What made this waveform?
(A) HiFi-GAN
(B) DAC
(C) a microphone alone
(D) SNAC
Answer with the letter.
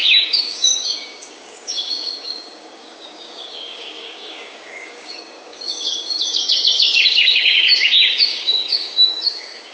B